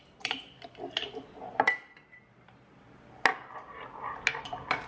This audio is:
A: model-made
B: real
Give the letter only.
B